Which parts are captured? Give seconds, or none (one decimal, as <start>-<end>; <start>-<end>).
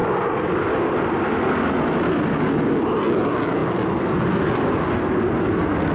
0.0-5.9